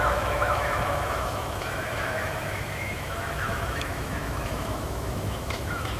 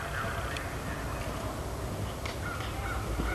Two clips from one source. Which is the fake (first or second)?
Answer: first